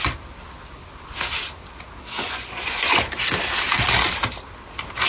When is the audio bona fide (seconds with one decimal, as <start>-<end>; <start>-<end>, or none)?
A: 0.0-2.1; 3.0-5.1